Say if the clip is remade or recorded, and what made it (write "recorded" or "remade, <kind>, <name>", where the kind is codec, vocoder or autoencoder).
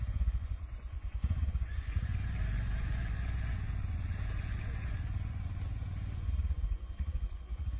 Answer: remade, vocoder, Vocos